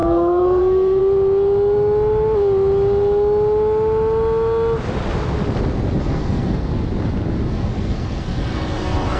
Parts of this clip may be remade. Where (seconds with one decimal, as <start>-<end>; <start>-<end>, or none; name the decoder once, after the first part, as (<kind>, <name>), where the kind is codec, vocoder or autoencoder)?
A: 0.0-1.0 (codec, SNAC); 6.0-6.7; 7.5-9.2